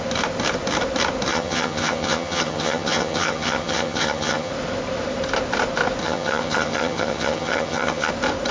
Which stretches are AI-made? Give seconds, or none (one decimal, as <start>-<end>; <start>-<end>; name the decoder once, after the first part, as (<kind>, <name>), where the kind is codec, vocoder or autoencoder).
1.3-4.5 (vocoder, HiFi-GAN); 6.0-8.1